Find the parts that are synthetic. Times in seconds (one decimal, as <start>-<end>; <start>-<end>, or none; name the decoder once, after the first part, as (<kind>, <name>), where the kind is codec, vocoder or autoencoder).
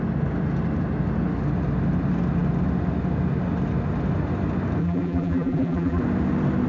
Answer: 4.8-6.0 (vocoder, BigVGAN v2)